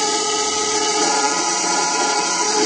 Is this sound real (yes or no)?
no